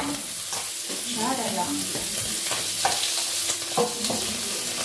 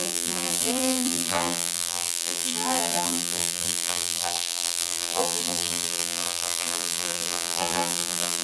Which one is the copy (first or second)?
second